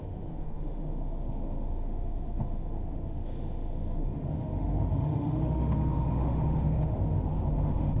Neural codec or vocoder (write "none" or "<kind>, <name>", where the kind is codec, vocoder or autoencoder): autoencoder, DAC-VAE